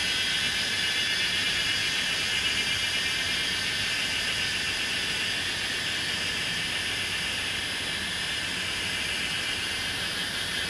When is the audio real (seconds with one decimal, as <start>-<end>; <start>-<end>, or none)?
0.0-10.7